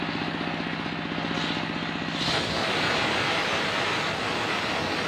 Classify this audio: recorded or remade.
recorded